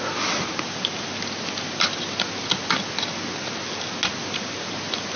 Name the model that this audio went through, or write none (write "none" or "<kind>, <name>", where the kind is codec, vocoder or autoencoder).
none